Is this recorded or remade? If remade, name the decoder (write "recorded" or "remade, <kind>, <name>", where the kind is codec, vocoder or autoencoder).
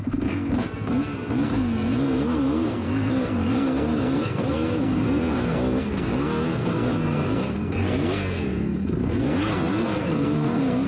remade, codec, SNAC